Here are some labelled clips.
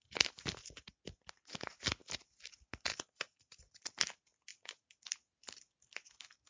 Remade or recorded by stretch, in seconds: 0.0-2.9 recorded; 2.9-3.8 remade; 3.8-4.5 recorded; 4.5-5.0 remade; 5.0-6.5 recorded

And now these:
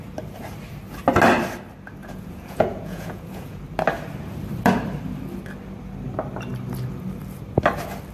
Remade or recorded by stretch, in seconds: 0.0-2.0 recorded; 2.0-3.6 remade; 3.6-8.1 recorded

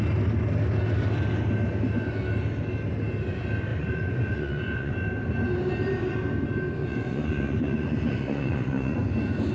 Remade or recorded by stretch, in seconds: 0.0-3.7 recorded; 3.7-4.9 remade; 4.9-6.8 recorded; 6.8-9.1 remade; 9.1-9.5 recorded

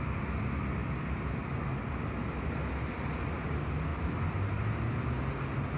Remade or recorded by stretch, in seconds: 0.0-5.8 recorded

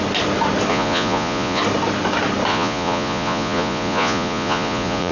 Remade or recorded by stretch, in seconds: 0.0-0.7 recorded; 0.7-1.6 remade; 1.6-2.5 recorded; 2.5-5.1 remade

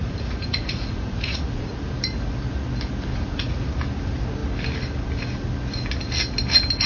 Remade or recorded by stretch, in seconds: 0.0-1.8 remade; 1.8-3.1 recorded; 3.1-3.7 remade; 3.7-6.9 recorded